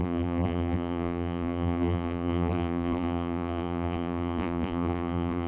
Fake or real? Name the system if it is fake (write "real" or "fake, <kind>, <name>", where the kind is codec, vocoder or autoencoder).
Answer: fake, vocoder, BigVGAN v2